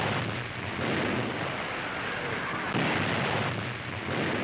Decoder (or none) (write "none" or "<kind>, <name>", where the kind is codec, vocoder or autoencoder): none